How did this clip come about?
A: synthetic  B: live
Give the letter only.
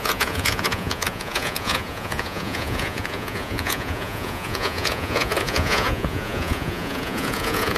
A